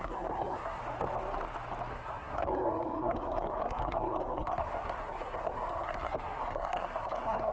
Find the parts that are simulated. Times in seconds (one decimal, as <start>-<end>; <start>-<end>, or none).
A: 0.0-0.8; 1.9-7.5